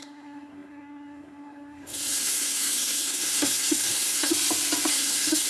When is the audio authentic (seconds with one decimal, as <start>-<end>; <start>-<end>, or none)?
4.3-4.9